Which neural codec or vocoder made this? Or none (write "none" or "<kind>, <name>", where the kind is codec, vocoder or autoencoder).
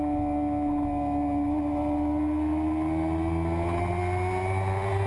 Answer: none